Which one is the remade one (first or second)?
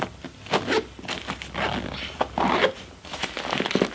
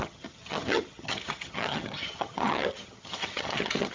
second